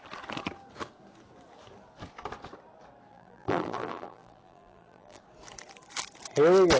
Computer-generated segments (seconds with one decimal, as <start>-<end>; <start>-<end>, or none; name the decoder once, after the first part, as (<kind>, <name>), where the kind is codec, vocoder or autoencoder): 3.1-5.2 (vocoder, BigVGAN v2)

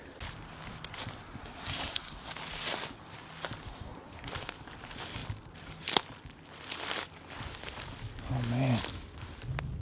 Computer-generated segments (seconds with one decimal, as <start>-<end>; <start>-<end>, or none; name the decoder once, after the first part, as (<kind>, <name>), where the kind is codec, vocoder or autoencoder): 1.4-2.3 (codec, SNAC); 3.6-4.3

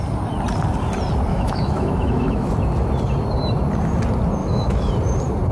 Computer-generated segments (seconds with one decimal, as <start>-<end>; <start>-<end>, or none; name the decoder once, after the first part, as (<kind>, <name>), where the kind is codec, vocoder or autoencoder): 1.3-2.5 (autoencoder, DAC-VAE); 4.4-4.9

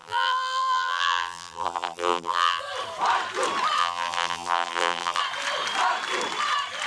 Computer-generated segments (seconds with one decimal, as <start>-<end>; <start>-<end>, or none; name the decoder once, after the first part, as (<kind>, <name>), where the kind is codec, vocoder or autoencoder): 0.0-2.6 (vocoder, BigVGAN v2); 3.8-5.2

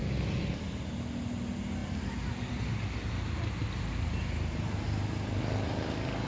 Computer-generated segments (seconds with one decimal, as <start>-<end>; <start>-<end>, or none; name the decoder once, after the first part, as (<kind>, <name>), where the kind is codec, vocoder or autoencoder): none

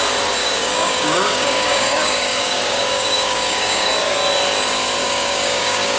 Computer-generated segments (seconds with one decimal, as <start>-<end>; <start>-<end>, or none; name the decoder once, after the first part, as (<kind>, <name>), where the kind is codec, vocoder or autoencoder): 0.4-3.9 (codec, DAC); 5.0-6.0

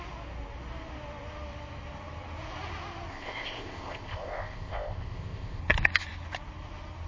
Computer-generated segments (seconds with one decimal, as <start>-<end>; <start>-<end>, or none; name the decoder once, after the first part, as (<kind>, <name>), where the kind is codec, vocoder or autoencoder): 3.1-5.6 (codec, ZipCodec)